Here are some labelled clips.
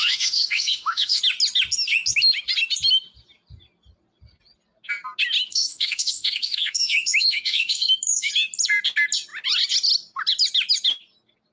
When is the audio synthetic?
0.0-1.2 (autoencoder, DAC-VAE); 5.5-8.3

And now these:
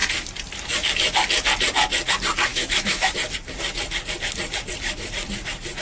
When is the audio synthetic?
2.5-3.1 (autoencoder, DAC-VAE)

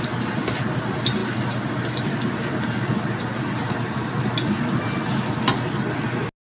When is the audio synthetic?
none

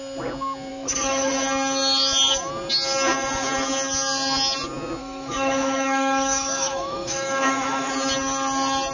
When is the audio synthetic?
0.7-1.3 (autoencoder, DAC-VAE); 5.0-7.9

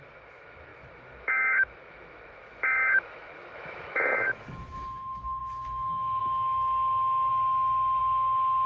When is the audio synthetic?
0.0-7.3 (autoencoder, DAC-VAE); 8.0-8.7

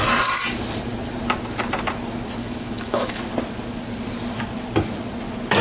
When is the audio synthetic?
2.4-3.2 (autoencoder, DAC-VAE)

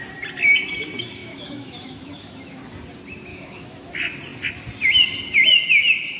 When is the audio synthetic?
1.2-2.6 (autoencoder, DAC-VAE); 3.3-3.9